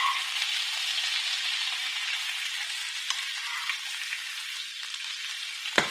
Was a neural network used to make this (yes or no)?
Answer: no